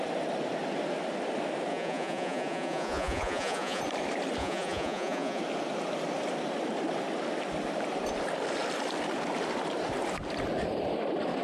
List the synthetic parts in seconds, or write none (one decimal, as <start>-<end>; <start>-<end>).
1.7-3.8; 4.4-5.4

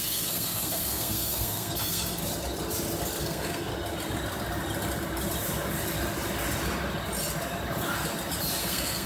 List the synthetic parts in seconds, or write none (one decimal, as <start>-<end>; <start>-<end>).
0.0-2.2; 3.2-3.7; 8.6-9.1

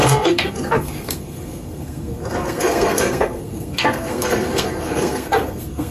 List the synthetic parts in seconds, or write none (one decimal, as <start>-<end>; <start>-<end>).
0.0-5.9

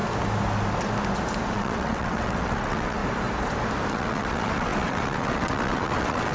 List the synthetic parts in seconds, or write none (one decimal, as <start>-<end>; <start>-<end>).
1.5-3.0; 3.9-6.3

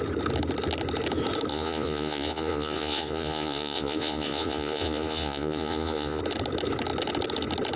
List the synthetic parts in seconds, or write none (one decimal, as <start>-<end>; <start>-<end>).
1.5-6.2